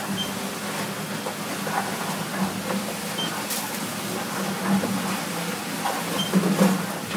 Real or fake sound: real